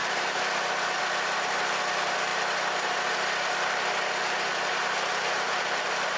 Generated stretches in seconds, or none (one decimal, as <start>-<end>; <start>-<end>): 0.0-2.3; 3.5-4.5; 5.1-6.2